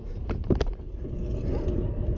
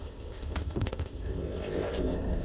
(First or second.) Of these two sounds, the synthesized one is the second